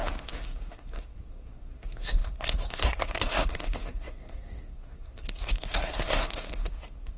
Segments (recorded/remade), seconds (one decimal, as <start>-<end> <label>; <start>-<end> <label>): 0.0-7.2 remade